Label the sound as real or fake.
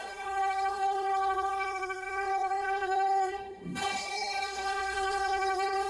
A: fake